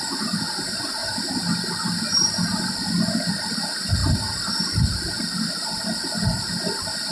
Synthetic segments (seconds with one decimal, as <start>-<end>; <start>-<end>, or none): 0.0-1.0; 3.3-7.1